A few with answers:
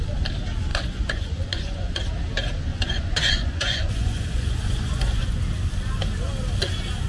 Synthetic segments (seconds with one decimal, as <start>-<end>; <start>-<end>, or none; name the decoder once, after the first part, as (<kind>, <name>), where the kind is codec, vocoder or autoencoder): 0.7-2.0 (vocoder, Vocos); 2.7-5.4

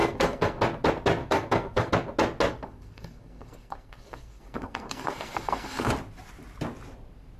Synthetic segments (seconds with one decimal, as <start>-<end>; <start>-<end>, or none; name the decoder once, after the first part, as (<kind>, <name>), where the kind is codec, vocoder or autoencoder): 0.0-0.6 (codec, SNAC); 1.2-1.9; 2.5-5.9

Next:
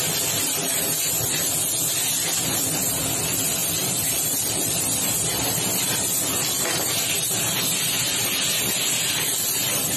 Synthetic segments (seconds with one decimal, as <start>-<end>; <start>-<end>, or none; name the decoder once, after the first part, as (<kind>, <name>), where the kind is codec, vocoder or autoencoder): none